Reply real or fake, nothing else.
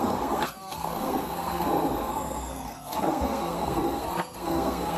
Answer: fake